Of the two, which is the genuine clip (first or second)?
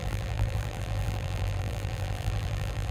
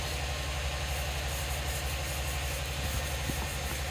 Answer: second